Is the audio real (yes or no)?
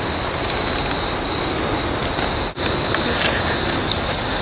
yes